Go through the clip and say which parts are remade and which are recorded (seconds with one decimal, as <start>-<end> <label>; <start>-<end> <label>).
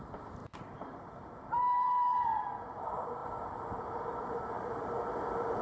0.0-0.4 remade; 0.4-1.5 recorded; 1.5-5.6 remade